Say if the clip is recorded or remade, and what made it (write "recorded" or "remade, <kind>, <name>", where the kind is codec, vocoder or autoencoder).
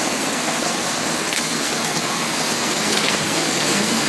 remade, codec, SNAC